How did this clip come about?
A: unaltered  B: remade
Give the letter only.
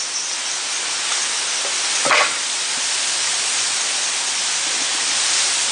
A